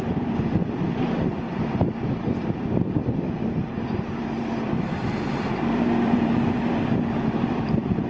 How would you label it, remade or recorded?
remade